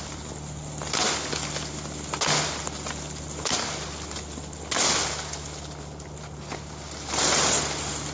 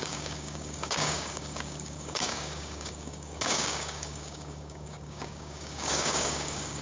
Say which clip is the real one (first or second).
first